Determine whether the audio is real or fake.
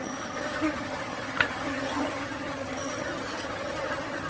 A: fake